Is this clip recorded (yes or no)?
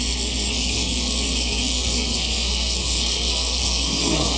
no